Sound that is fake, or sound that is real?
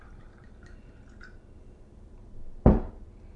fake